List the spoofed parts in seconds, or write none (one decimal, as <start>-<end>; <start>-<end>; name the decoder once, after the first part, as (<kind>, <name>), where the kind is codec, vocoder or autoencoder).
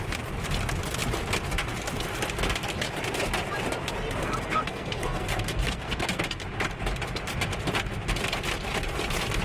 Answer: 4.2-6.2 (codec, SNAC)